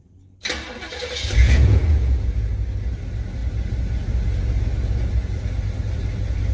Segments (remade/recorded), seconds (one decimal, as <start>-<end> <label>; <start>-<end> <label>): 0.0-1.4 recorded; 1.4-2.5 remade; 2.5-6.5 recorded